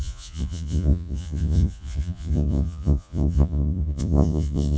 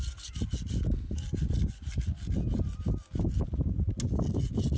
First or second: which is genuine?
second